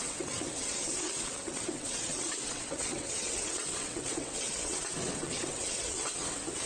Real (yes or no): no